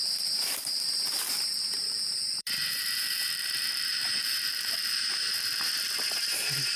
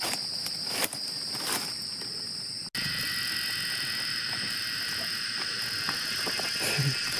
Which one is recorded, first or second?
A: second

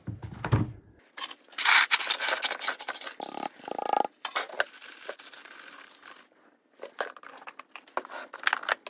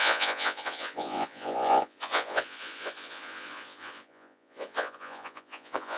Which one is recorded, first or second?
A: first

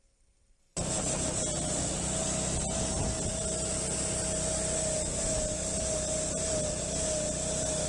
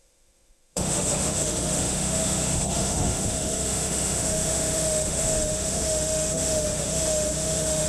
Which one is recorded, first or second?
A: first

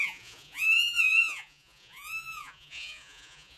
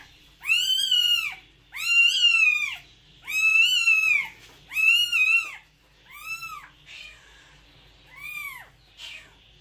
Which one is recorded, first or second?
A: second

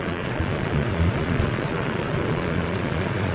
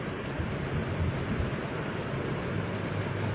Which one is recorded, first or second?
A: second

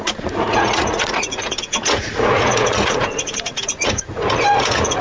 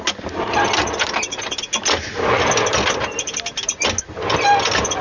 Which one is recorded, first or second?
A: second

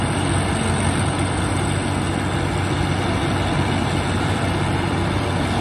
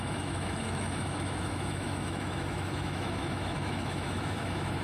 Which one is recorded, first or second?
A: first